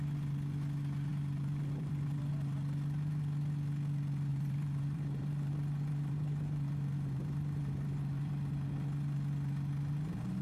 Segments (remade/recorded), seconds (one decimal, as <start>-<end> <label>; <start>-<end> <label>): 0.0-1.1 recorded; 1.1-2.3 remade; 2.3-4.3 recorded; 4.3-8.7 remade; 8.7-10.4 recorded